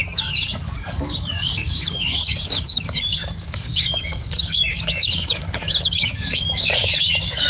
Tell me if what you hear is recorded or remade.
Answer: remade